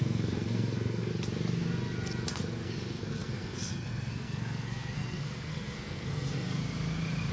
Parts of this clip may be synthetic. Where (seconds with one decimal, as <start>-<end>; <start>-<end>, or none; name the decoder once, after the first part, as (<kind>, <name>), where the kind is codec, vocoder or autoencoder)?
0.0-1.1 (codec, SNAC); 2.3-6.6